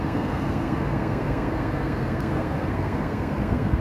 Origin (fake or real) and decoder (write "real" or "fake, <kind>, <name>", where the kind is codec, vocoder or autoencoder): fake, codec, SNAC